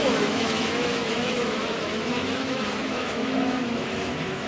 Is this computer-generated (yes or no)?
yes